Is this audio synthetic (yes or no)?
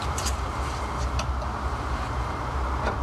no